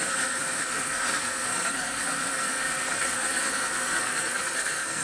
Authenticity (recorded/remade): remade